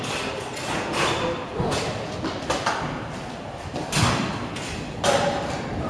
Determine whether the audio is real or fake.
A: real